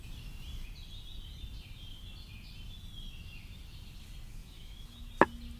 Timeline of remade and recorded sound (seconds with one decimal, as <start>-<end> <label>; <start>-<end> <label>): 0.0-4.4 recorded; 4.4-5.1 remade; 5.1-5.6 recorded